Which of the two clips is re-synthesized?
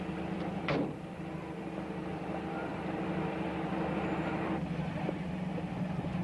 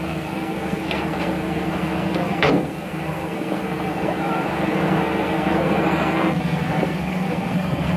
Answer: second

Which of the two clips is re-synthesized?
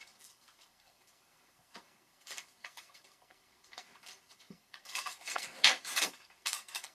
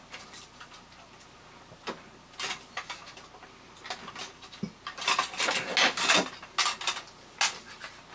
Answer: first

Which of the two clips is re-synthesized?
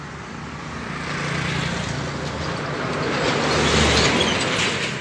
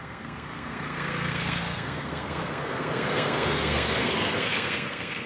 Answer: second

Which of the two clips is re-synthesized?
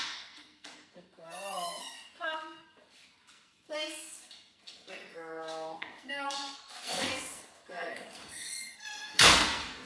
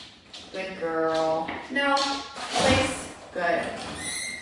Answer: first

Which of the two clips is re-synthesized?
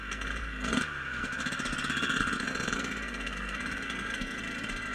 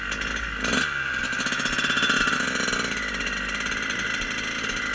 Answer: first